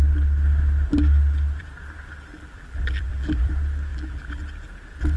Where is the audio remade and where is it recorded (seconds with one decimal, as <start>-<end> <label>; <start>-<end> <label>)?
0.0-2.3 recorded; 2.3-3.5 remade; 3.5-3.9 recorded; 3.9-4.4 remade; 4.4-5.2 recorded